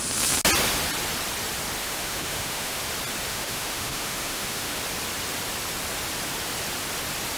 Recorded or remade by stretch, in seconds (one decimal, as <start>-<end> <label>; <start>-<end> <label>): 0.0-1.8 recorded; 1.8-2.8 remade; 2.8-3.3 recorded; 3.3-4.8 remade; 4.8-7.4 recorded

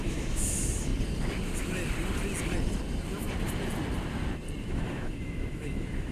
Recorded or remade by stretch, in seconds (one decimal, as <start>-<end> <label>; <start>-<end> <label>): 0.0-0.9 remade; 0.9-4.6 recorded; 4.6-6.1 remade